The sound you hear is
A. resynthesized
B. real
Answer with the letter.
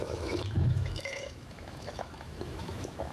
A